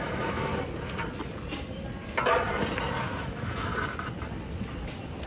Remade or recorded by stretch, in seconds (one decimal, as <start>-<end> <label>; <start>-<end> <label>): 0.0-0.5 remade; 0.5-3.2 recorded; 3.2-3.7 remade; 3.7-5.3 recorded